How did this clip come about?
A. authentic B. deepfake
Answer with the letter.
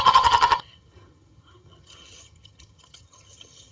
B